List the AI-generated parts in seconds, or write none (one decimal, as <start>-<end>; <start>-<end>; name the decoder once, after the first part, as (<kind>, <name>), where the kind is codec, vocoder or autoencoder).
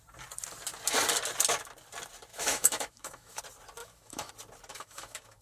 2.3-3.4 (autoencoder, DAC-VAE); 3.8-4.3; 4.7-5.4